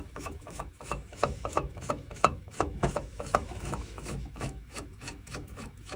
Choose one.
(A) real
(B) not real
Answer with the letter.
B